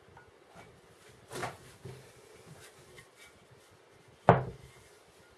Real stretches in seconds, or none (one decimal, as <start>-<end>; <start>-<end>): 0.0-5.4